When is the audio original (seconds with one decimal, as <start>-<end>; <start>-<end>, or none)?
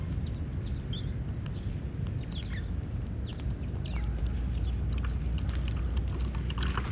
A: 0.0-6.9